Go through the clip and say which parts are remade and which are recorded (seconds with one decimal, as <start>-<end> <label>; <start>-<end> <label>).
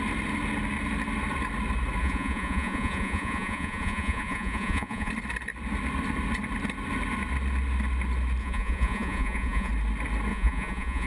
0.0-2.0 recorded; 2.0-5.1 remade; 5.1-8.4 recorded; 8.4-9.7 remade; 9.7-10.3 recorded; 10.3-11.1 remade